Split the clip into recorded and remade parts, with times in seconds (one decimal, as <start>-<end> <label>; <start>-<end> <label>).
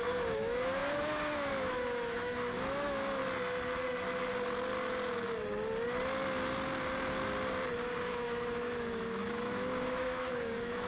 0.0-3.2 remade; 3.2-8.0 recorded; 8.0-10.9 remade